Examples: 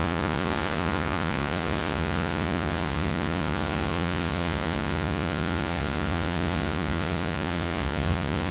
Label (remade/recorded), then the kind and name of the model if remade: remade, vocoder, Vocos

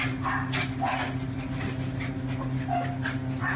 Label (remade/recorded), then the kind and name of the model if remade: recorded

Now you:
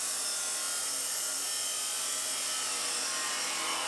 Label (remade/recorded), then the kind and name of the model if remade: recorded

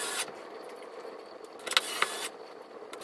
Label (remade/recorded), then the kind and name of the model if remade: recorded